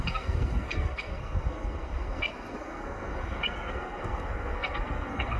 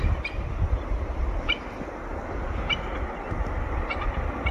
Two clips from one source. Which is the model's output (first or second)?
first